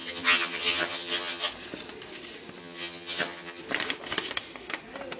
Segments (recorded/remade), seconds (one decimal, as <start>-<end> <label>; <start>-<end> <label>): 0.0-1.5 remade; 1.5-2.6 recorded; 2.6-3.6 remade; 3.6-5.2 recorded